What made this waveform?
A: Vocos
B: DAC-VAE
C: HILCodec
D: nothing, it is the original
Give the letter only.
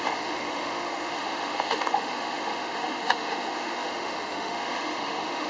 B